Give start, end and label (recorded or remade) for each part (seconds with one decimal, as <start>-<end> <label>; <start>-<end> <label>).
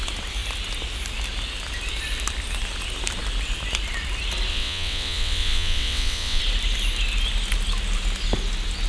0.0-4.5 recorded; 4.5-6.4 remade; 6.4-8.9 recorded